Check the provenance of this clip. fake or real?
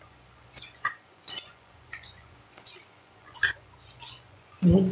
fake